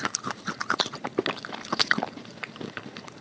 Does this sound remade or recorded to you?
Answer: recorded